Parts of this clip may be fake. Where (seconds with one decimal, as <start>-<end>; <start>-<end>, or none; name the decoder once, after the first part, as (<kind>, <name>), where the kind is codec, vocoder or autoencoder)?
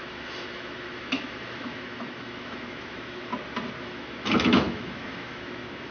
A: 0.0-3.3 (autoencoder, DAC-VAE); 3.8-5.9